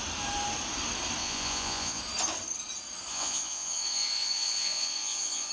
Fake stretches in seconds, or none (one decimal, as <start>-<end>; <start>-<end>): 1.2-2.0; 3.1-5.5